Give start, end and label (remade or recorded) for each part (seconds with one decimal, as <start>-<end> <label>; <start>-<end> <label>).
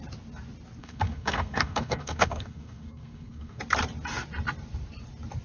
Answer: 0.0-0.8 recorded; 0.8-3.6 remade; 3.6-5.4 recorded